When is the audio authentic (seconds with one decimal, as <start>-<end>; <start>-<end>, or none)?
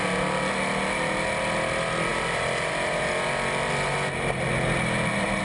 0.0-5.4